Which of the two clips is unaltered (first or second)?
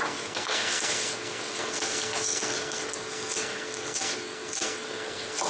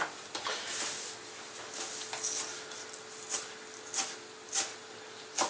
second